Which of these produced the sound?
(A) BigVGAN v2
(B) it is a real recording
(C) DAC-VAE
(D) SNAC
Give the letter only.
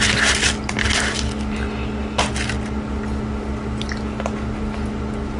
B